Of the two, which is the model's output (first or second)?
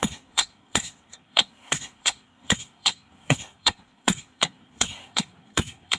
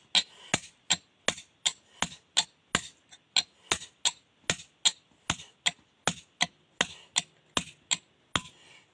first